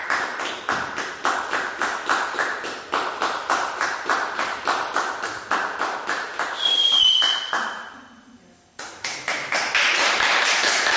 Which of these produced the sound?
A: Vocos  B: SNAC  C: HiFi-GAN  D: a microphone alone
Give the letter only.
D